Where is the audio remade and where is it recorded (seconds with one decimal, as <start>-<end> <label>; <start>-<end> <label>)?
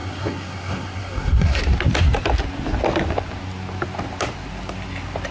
0.0-1.6 remade; 1.6-5.3 recorded